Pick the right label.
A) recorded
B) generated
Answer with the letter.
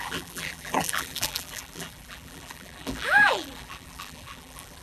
B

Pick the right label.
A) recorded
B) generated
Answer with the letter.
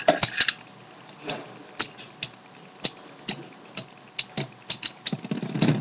A